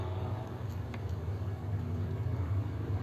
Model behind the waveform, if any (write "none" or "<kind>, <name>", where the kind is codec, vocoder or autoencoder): codec, DAC